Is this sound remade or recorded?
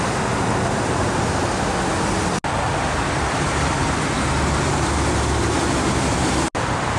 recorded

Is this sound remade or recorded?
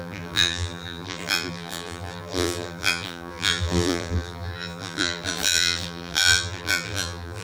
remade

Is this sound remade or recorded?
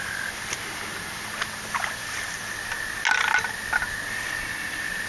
recorded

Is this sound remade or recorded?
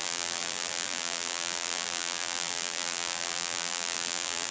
remade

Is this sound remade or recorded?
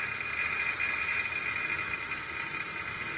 recorded